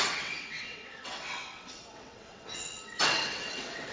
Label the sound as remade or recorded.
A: remade